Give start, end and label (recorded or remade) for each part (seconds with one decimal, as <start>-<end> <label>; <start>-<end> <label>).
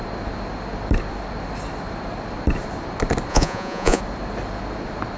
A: 0.0-3.3 recorded; 3.3-4.0 remade; 4.0-5.2 recorded